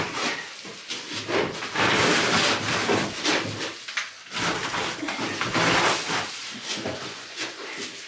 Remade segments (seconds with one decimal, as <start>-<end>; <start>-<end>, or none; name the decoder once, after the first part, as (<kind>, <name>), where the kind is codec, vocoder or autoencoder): 6.4-7.6 (vocoder, Vocos)

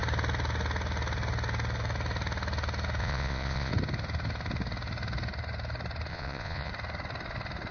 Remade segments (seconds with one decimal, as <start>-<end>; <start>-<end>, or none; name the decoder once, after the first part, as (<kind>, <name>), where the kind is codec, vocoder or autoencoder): 3.0-3.7 (vocoder, Vocos); 6.1-6.7

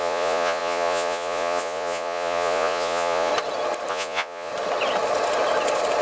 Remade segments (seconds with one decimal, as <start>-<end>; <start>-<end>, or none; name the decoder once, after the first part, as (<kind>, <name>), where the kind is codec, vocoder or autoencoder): 0.0-3.3 (vocoder, Vocos); 3.9-4.5